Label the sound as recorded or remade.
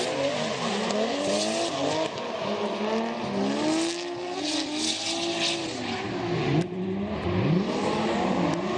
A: recorded